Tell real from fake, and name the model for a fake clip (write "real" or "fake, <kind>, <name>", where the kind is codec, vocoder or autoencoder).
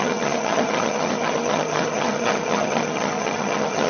fake, vocoder, HiFi-GAN